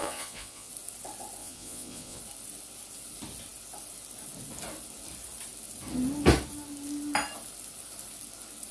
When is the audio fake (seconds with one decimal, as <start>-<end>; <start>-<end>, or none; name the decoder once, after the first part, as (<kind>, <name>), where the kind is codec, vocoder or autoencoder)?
0.0-0.7 (vocoder, Vocos); 1.4-2.2